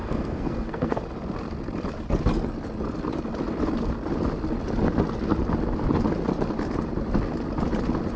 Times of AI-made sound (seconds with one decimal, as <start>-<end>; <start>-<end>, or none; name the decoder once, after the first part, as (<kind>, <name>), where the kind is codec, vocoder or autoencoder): 0.0-1.0 (codec, SNAC)